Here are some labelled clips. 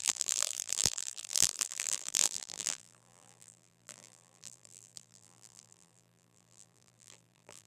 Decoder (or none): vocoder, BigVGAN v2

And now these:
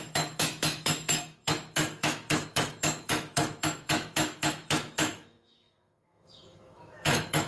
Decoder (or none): autoencoder, DAC-VAE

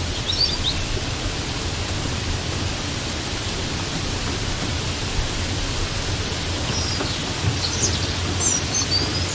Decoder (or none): none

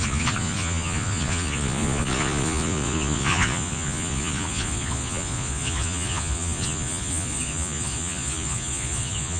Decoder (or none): vocoder, Vocos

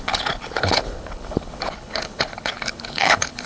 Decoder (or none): codec, HILCodec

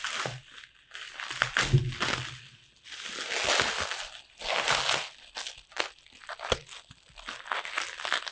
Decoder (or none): none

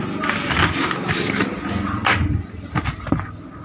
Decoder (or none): none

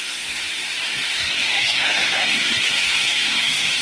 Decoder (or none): codec, SNAC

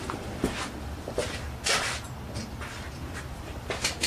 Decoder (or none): vocoder, BigVGAN v2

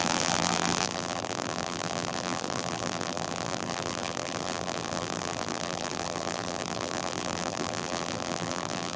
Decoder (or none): vocoder, BigVGAN v2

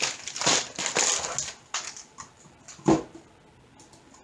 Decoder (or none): none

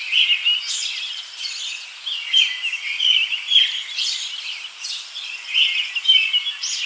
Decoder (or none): none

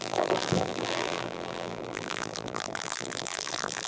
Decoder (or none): vocoder, BigVGAN v2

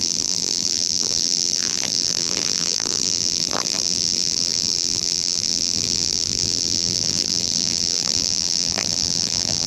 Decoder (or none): vocoder, BigVGAN v2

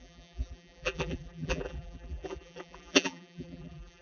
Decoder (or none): vocoder, BigVGAN v2